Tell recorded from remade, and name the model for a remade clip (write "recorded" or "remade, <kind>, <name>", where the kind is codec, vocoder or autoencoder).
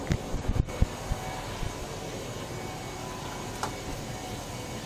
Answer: recorded